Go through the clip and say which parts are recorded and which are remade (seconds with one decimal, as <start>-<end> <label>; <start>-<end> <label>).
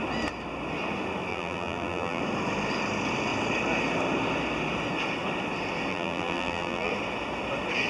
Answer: 0.0-1.3 recorded; 1.3-2.2 remade; 2.2-5.9 recorded; 5.9-6.9 remade; 6.9-7.9 recorded